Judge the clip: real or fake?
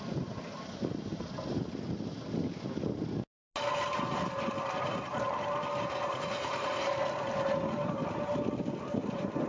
real